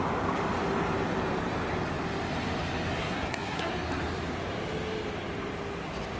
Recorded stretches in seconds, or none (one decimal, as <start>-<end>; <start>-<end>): 0.0-3.0; 3.7-6.2